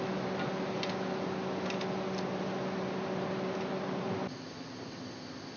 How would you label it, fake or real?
real